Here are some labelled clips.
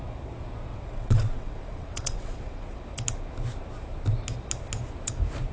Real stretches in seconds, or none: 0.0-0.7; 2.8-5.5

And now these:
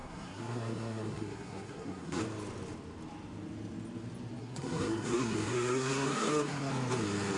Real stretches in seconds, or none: 2.2-4.4; 6.7-7.4

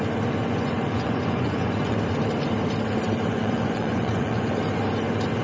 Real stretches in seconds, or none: 0.0-0.4; 2.0-3.3; 4.5-5.4

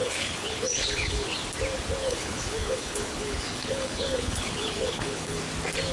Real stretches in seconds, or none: 1.3-2.0; 5.4-5.9

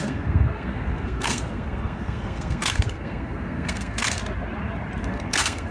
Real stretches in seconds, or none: 4.2-5.0

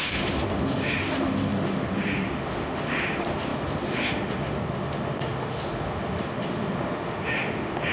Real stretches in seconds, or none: none

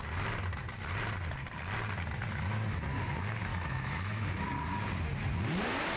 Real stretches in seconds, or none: 0.0-3.5; 4.5-6.0

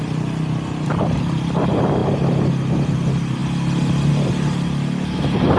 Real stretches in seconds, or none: 0.0-5.6